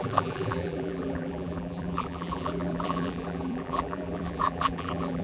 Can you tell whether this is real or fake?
fake